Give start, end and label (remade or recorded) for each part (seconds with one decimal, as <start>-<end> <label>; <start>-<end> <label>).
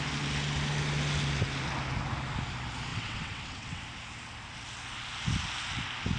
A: 0.0-2.9 recorded; 2.9-3.8 remade; 3.8-6.2 recorded